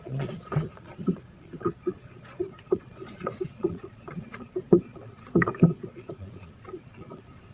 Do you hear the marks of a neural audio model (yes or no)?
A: yes